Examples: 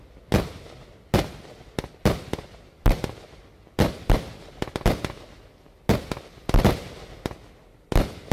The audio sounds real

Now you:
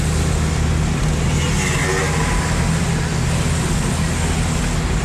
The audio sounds real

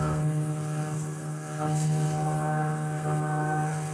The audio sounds fake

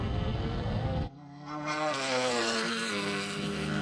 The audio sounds fake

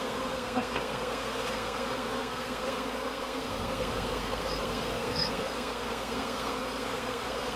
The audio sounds fake